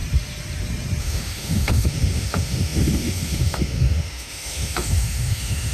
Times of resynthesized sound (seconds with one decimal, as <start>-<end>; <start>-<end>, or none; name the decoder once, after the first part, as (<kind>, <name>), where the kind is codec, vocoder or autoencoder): 1.0-5.7 (autoencoder, DAC-VAE)

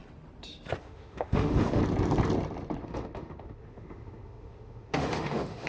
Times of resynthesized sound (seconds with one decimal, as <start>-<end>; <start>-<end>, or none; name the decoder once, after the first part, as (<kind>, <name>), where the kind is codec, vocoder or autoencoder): 0.8-1.8 (autoencoder, DAC-VAE); 2.8-5.7

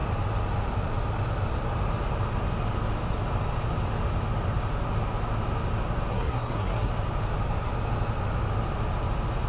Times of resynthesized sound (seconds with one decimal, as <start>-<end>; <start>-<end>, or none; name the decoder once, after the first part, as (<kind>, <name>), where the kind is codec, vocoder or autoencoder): 6.1-6.9 (codec, SNAC)

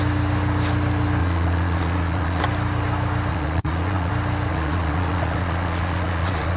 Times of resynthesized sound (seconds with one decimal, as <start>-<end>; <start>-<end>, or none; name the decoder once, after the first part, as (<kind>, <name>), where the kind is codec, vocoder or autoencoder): 1.2-2.4 (vocoder, Vocos); 3.3-4.1; 4.5-6.6

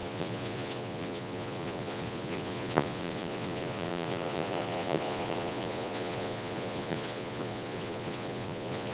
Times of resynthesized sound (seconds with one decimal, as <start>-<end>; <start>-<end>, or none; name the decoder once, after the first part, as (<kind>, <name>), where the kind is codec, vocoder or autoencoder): 0.0-8.9 (vocoder, Vocos)

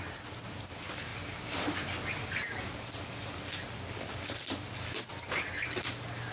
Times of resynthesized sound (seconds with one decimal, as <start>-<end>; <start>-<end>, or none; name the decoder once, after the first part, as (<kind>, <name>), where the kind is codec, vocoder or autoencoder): none

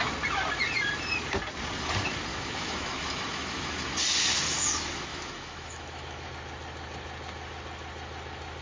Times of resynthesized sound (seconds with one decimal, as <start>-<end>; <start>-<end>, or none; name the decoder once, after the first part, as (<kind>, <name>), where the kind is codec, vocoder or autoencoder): 2.3-3.9 (autoencoder, DAC-VAE); 5.1-6.3

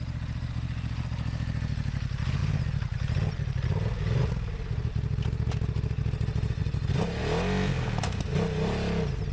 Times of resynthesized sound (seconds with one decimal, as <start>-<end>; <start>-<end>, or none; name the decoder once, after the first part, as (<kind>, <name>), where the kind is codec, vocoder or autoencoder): none